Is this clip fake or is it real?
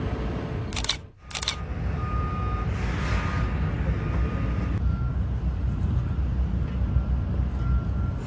real